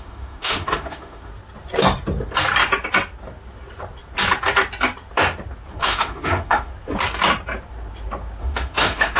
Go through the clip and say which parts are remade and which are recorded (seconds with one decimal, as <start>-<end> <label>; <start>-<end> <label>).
0.0-1.3 remade; 1.3-5.8 recorded; 5.8-6.7 remade; 6.7-8.4 recorded; 8.4-9.2 remade